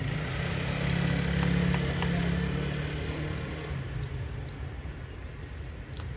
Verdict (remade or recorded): recorded